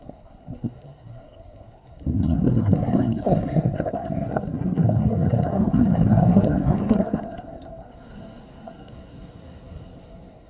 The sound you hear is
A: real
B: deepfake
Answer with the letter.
B